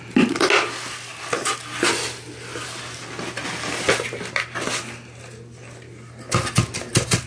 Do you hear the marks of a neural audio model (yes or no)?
no